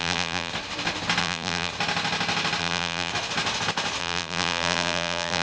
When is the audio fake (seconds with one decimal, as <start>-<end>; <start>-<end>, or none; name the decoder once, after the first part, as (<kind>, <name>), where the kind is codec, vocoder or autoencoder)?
0.0-0.5 (vocoder, BigVGAN v2); 1.2-1.7; 2.6-3.1; 4.0-5.4